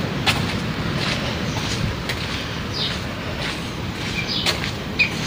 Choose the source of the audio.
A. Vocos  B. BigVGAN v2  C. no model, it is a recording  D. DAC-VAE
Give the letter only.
C